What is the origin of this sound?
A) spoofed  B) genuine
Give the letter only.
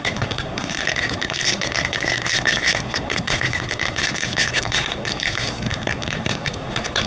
A